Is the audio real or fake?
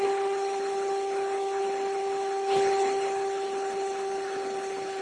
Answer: fake